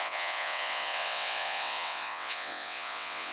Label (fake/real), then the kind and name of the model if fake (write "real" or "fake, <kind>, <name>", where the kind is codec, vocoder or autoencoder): fake, vocoder, WaveNeXt